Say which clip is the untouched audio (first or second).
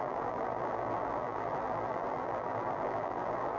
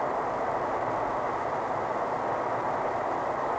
second